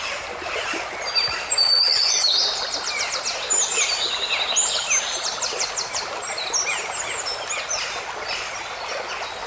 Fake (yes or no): no